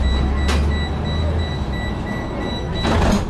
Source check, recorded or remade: recorded